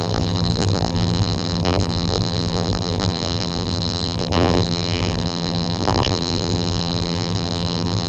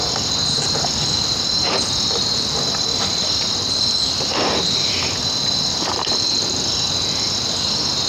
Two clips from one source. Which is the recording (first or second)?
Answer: second